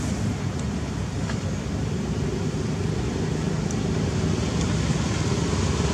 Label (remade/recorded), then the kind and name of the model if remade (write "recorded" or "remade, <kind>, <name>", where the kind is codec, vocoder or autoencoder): recorded